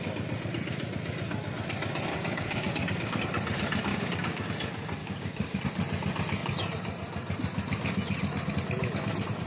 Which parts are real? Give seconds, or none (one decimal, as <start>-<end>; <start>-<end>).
0.0-2.1; 3.2-3.9; 4.5-5.0; 5.6-9.5